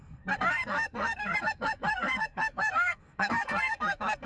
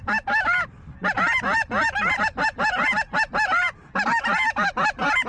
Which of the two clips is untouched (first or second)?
second